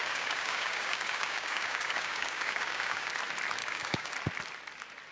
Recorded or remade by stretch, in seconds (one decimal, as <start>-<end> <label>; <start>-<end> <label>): 0.0-3.1 remade; 3.1-3.6 recorded; 3.6-4.1 remade; 4.1-5.1 recorded